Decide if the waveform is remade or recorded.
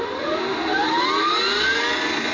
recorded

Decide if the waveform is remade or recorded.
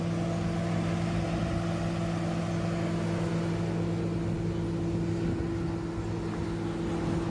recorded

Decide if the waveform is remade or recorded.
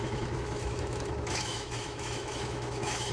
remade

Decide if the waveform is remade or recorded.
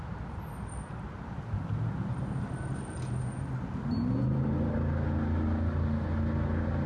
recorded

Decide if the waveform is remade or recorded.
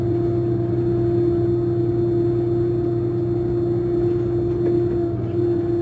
recorded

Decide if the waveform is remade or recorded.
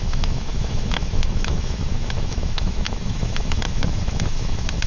remade